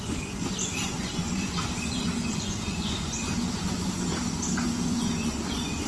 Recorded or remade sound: remade